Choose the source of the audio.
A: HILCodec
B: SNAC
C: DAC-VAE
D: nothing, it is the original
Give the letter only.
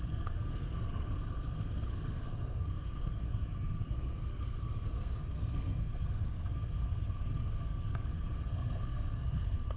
B